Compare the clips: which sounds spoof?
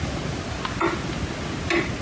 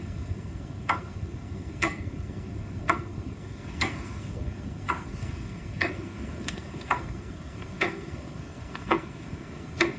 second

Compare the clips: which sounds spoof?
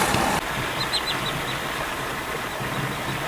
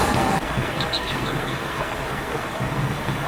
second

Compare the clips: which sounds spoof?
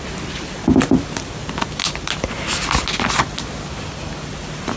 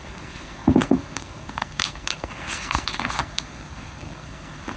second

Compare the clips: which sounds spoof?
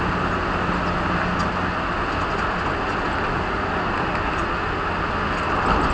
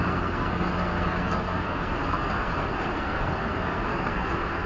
second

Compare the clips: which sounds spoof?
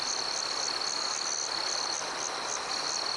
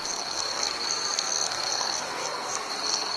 second